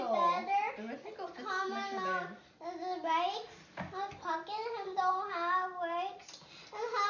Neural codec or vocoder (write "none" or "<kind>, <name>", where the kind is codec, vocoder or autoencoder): none